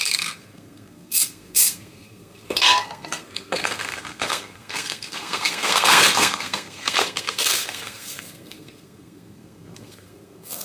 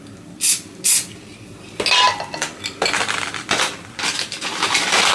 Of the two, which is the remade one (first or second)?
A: first